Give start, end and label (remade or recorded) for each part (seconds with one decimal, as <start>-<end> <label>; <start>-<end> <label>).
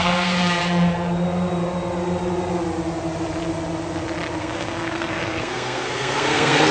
0.0-0.6 remade; 0.6-4.3 recorded; 4.3-6.7 remade